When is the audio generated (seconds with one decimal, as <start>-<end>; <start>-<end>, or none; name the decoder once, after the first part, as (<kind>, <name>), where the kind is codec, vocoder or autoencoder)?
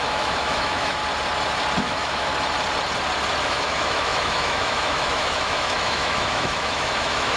0.0-1.0 (autoencoder, DAC-VAE); 1.8-2.3; 3.4-7.4